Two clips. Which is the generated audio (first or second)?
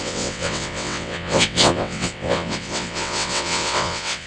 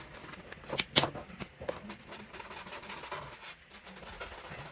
first